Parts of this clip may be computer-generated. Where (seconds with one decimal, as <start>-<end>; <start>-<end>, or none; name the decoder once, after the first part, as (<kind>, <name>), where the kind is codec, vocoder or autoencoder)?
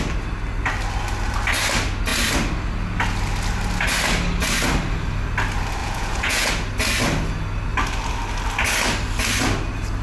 5.8-6.5 (vocoder, Vocos)